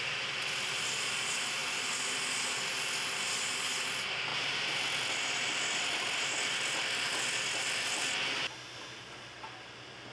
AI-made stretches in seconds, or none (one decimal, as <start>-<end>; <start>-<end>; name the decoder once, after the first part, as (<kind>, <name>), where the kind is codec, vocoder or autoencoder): none